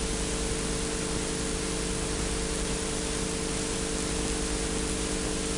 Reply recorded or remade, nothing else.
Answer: recorded